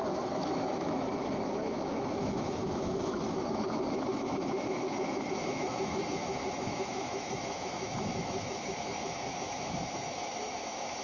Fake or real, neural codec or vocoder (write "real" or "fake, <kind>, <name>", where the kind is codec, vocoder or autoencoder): fake, autoencoder, DAC-VAE